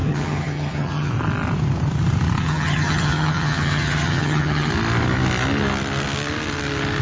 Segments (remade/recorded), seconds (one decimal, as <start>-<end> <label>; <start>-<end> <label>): 0.0-1.1 remade; 1.1-2.4 recorded; 2.4-4.7 remade; 4.7-7.0 recorded